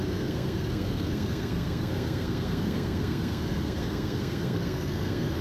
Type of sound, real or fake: fake